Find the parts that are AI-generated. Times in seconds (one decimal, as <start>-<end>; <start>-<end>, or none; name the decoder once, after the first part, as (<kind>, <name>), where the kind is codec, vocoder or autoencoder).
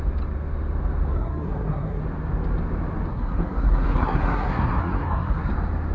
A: 1.1-2.0 (codec, SNAC); 3.1-5.5